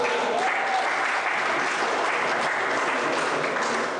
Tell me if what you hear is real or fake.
real